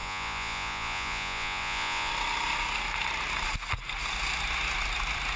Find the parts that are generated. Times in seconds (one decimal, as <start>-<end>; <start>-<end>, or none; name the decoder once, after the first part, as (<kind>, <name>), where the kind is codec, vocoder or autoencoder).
0.0-2.1 (vocoder, Vocos)